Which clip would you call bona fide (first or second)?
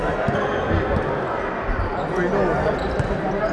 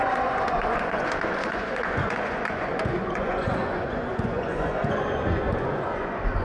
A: first